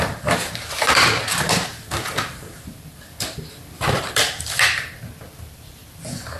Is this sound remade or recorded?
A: remade